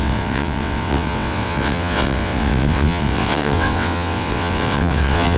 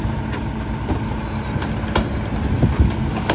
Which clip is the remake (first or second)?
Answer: first